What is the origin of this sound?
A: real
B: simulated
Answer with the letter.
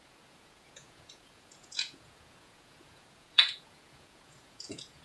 B